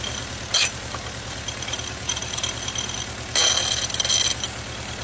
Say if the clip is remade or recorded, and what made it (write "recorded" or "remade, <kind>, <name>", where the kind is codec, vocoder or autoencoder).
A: recorded